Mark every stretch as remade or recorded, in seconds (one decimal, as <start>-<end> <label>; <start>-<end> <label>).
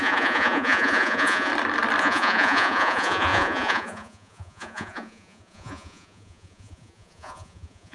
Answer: 0.0-1.5 remade; 1.5-2.0 recorded; 2.0-7.9 remade